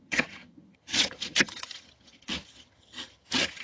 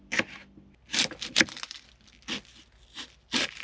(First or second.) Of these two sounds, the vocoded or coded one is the first